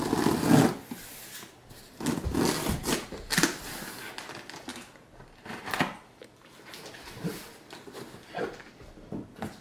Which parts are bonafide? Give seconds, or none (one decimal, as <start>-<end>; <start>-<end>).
0.0-9.6